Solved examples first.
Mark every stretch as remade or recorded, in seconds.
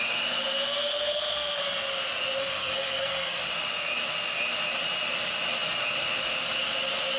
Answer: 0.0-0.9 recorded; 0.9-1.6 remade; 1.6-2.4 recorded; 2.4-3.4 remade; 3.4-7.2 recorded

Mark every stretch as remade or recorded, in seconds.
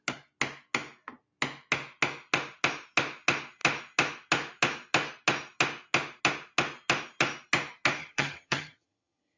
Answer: 0.0-8.0 recorded; 8.0-9.4 remade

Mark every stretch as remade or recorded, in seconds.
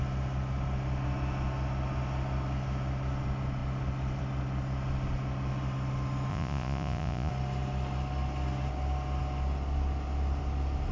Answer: 0.0-6.3 recorded; 6.3-7.3 remade; 7.3-10.9 recorded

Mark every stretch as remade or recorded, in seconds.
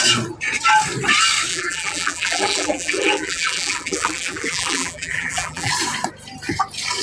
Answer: 0.0-1.5 recorded; 1.5-5.7 remade; 5.7-7.0 recorded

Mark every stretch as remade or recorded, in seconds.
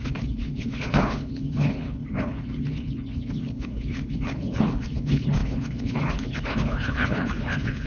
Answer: 0.0-7.9 remade